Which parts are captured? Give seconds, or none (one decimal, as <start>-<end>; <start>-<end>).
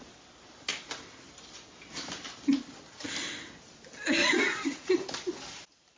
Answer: 0.0-4.2; 5.1-6.0